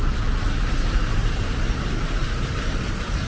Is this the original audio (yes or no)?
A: no